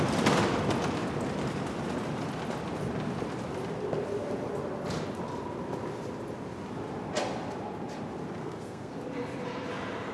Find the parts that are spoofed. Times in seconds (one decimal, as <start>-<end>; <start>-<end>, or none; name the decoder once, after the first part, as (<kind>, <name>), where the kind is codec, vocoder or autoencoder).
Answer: 8.4-8.9 (codec, SNAC)